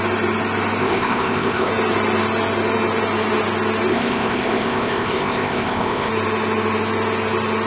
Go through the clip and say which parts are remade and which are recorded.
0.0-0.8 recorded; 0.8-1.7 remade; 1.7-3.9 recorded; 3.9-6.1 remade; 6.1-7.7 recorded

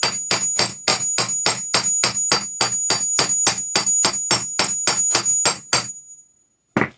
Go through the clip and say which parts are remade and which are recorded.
0.0-7.0 recorded

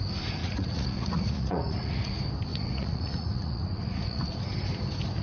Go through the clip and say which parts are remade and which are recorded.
0.0-0.4 recorded; 0.4-2.1 remade; 2.1-2.5 recorded; 2.5-4.3 remade; 4.3-5.2 recorded

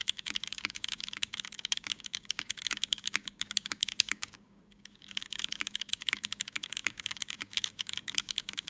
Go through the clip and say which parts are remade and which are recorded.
0.0-8.7 remade

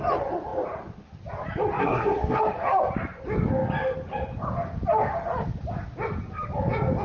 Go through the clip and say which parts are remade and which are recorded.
0.0-1.8 recorded; 1.8-2.4 remade; 2.4-7.0 recorded